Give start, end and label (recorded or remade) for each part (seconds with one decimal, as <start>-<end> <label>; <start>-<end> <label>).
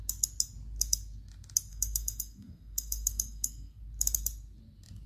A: 0.0-1.7 recorded; 1.7-3.8 remade; 3.8-5.1 recorded